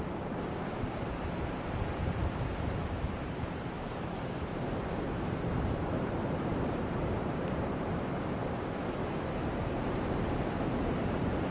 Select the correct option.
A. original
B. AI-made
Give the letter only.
B